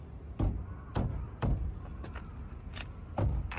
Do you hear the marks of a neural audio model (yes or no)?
no